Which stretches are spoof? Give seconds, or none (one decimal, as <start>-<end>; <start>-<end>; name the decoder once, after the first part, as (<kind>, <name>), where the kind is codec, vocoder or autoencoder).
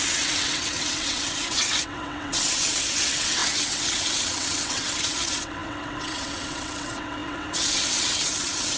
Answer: 0.0-8.8 (vocoder, WaveNeXt)